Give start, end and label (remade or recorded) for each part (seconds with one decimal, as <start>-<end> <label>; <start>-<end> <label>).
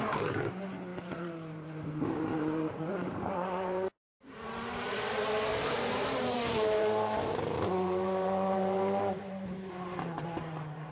0.0-10.9 remade